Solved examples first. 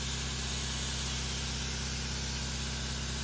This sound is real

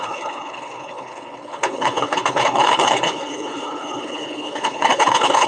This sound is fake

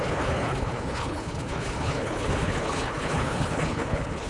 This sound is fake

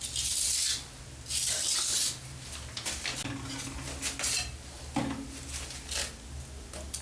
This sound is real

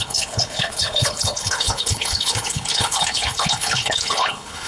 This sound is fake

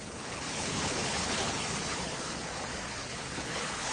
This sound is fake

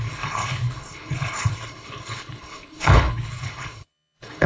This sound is fake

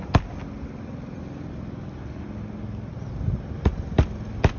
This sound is real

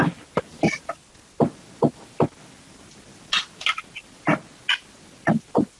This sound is real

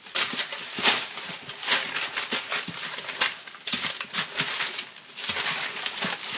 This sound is real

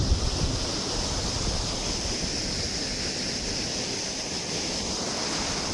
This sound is real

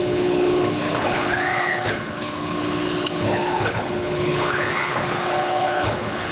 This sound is fake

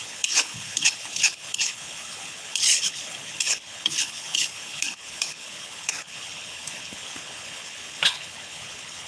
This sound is fake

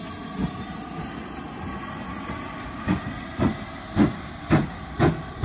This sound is real